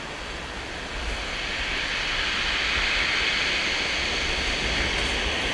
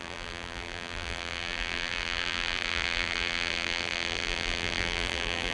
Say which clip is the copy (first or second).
second